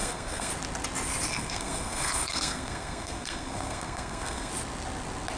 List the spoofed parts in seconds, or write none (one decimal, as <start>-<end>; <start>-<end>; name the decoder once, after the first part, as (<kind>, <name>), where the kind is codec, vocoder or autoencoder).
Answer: 0.0-0.5 (codec, SNAC); 1.3-4.5